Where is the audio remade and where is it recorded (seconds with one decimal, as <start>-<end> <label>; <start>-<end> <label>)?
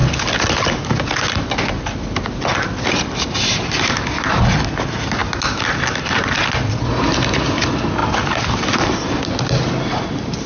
0.0-10.5 recorded